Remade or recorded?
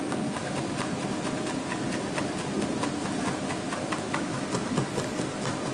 recorded